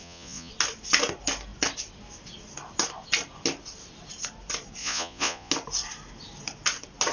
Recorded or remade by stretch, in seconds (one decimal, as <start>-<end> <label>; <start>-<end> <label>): 0.0-0.5 remade; 0.5-4.8 recorded; 4.8-5.5 remade; 5.5-7.1 recorded